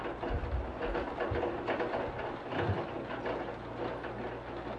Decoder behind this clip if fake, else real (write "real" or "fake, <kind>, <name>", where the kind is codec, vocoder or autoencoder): real